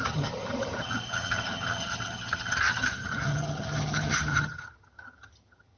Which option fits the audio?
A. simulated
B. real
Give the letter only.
A